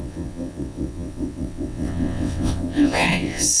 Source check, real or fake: fake